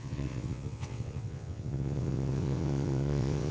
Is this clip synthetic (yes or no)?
yes